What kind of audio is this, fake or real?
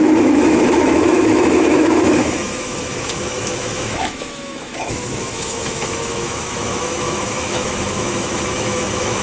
fake